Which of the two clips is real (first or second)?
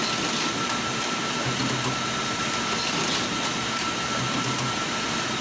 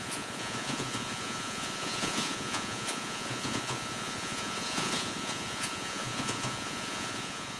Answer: first